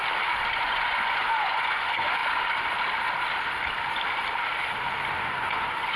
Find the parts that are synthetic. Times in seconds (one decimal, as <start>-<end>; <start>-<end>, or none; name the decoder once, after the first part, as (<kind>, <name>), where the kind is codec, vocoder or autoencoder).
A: 0.5-2.2 (vocoder, Vocos); 5.2-6.0